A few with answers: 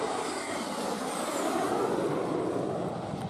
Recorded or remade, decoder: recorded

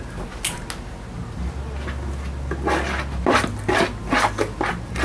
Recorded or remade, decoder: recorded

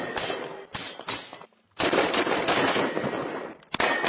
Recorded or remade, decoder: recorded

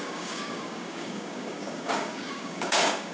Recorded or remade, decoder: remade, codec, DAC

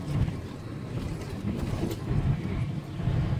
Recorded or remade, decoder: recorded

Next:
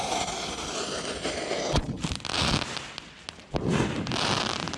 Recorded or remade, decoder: recorded